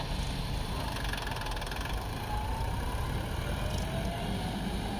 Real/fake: real